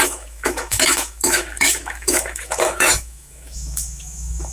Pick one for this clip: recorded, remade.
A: remade